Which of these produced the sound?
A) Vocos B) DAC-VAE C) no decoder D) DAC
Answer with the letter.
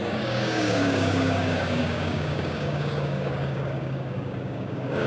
D